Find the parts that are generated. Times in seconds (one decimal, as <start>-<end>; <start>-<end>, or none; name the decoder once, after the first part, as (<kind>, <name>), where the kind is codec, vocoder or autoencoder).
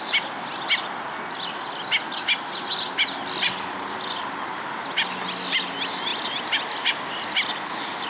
none